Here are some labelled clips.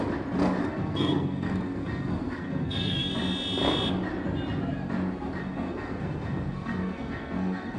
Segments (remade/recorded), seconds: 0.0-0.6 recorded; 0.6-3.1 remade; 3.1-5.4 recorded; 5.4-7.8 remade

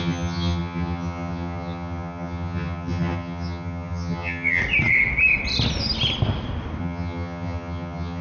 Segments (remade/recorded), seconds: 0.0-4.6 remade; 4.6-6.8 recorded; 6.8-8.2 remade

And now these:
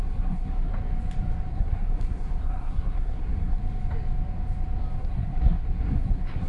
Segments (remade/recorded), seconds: 0.0-0.7 remade; 0.7-1.5 recorded; 1.5-3.6 remade; 3.6-5.0 recorded; 5.0-6.5 remade

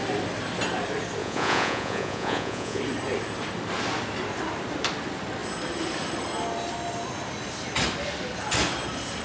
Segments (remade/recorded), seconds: 0.0-1.2 recorded; 1.2-2.8 remade; 2.8-9.2 recorded

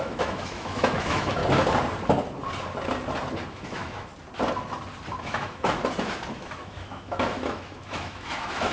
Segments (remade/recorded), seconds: 0.0-1.4 remade; 1.4-3.5 recorded; 3.5-4.1 remade; 4.1-5.2 recorded; 5.2-5.8 remade; 5.8-6.3 recorded; 6.3-8.7 remade